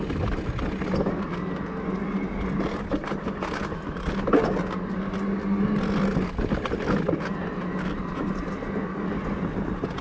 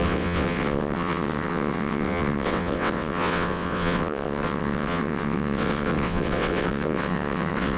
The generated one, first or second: second